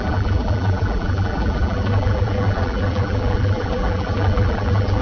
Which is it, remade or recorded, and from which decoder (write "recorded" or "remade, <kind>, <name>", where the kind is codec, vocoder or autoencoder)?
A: remade, vocoder, BigVGAN v2